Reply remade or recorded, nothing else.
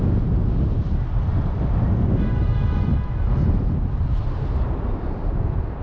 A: recorded